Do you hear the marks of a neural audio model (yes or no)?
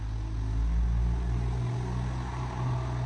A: no